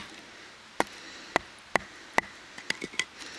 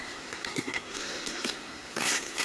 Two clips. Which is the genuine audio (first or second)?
first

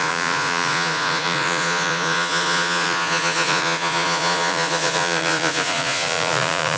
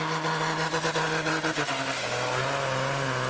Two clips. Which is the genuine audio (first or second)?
second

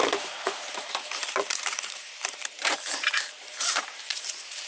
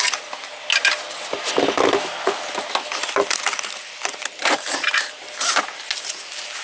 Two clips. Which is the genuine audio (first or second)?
second